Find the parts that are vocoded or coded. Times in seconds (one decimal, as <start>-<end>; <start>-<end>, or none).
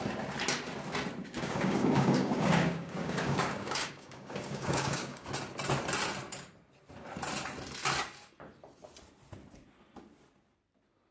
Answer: 1.2-5.3